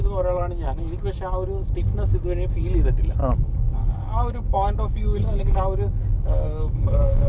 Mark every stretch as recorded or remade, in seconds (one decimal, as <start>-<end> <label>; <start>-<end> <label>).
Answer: 0.0-0.4 recorded; 0.4-1.0 remade; 1.0-3.2 recorded; 3.2-5.6 remade; 5.6-6.0 recorded; 6.0-7.3 remade